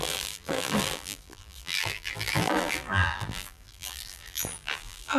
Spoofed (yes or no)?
yes